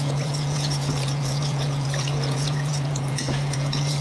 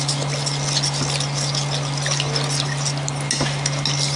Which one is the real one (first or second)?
second